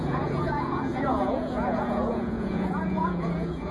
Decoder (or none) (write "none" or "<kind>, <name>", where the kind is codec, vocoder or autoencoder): vocoder, Vocos